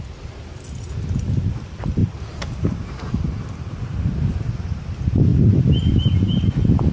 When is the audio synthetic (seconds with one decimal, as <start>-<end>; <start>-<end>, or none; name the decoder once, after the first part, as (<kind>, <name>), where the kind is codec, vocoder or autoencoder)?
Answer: none